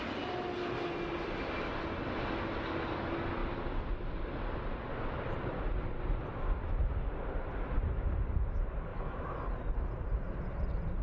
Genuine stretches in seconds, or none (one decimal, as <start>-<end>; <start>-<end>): 0.0-8.9; 9.5-11.0